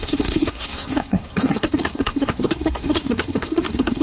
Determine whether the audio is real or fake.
fake